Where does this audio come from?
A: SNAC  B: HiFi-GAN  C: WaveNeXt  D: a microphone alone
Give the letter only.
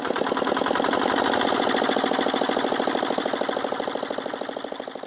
D